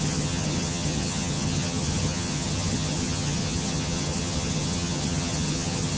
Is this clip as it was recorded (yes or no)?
no